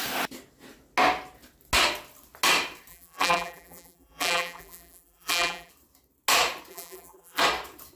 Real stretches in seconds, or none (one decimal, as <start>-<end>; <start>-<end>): 0.0-2.9; 5.7-6.7; 7.4-8.0